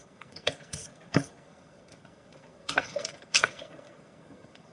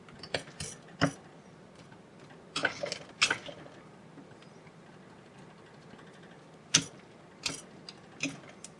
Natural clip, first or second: second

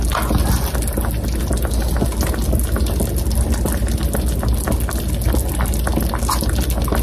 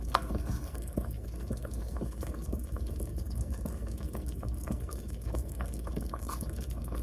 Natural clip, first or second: first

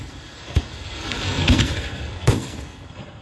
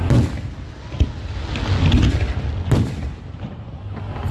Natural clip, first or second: second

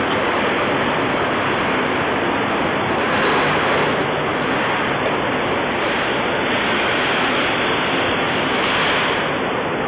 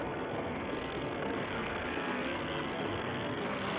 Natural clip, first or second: first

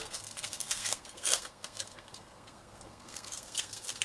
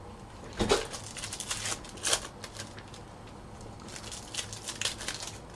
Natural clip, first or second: second